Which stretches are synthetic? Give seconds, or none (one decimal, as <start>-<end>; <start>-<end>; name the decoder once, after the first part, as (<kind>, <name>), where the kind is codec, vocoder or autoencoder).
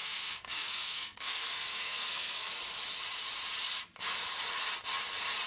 0.0-2.5 (codec, SNAC)